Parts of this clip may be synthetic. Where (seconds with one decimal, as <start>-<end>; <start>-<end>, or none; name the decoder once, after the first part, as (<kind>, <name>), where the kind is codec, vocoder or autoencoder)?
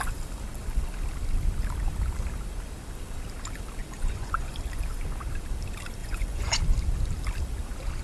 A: 3.8-4.5 (vocoder, Vocos); 6.0-6.6